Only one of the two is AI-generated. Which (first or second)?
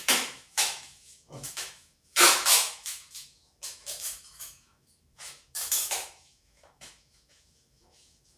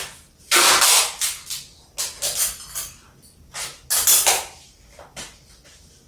first